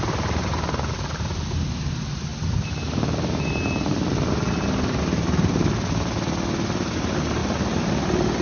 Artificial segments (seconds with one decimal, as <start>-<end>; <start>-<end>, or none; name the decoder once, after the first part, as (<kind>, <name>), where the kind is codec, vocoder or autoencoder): 7.4-8.4 (vocoder, BigVGAN v2)